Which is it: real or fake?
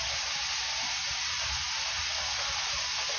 real